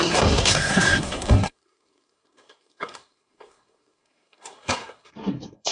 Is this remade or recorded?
remade